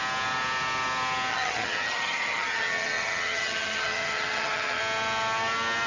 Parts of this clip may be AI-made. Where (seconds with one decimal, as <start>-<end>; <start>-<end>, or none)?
1.3-4.8

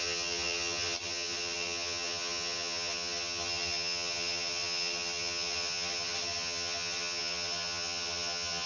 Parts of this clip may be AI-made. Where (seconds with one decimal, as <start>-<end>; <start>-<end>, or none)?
0.0-8.7